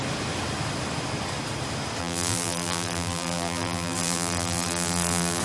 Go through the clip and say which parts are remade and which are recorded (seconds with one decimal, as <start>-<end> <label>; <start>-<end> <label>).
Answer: 0.0-2.0 recorded; 2.0-5.4 remade